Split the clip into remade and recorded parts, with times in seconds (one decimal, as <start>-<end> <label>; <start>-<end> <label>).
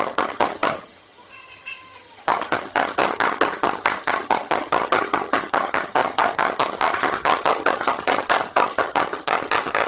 0.0-9.9 remade